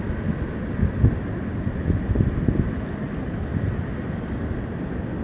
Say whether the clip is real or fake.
real